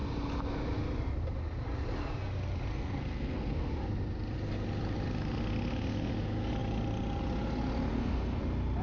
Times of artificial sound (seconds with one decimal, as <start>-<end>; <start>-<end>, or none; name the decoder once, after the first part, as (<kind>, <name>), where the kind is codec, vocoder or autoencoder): 2.7-3.7 (codec, SNAC); 7.9-8.4